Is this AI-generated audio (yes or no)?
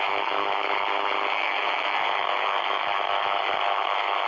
yes